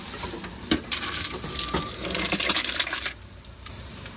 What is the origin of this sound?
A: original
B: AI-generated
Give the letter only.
B